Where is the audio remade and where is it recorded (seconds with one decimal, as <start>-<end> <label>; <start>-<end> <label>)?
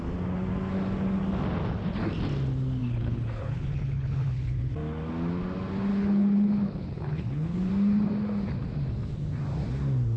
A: 0.0-2.8 recorded; 2.8-4.7 remade; 4.7-5.9 recorded; 5.9-7.7 remade; 7.7-10.2 recorded